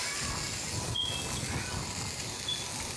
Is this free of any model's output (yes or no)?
yes